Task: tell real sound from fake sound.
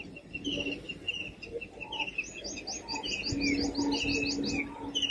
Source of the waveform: real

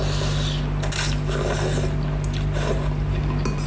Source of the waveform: real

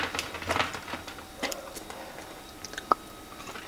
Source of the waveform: real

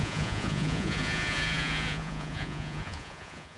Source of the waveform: fake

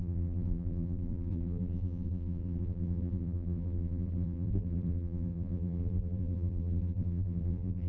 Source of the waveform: fake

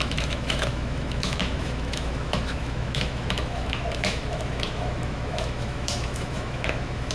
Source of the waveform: fake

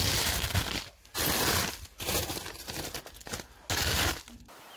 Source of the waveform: real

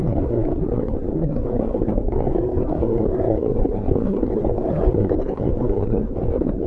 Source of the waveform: fake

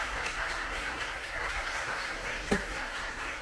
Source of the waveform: fake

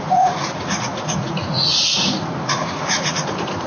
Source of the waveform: fake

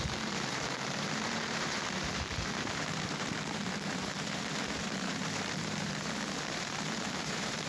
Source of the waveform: fake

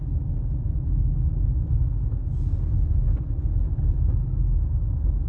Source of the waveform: real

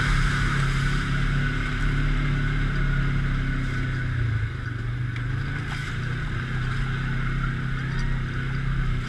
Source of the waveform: real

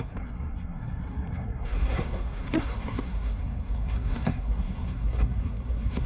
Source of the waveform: fake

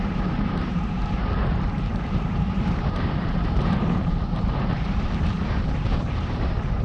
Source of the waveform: fake